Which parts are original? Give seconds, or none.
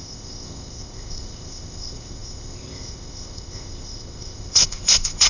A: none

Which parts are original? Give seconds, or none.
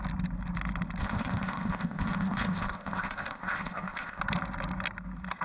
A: 0.0-1.0; 4.2-5.4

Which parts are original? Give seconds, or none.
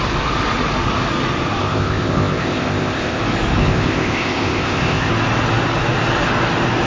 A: 0.0-1.6; 3.2-3.6; 5.1-6.9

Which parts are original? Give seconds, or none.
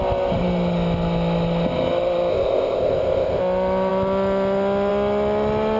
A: 0.0-2.3; 3.4-5.8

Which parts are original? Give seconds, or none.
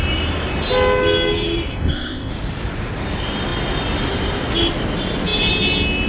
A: 0.0-1.7; 2.3-6.1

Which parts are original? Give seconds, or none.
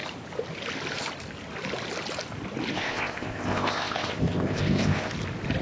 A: 0.0-2.7; 5.1-5.6